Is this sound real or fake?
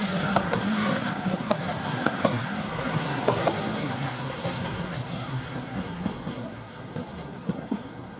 fake